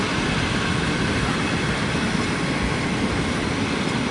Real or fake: real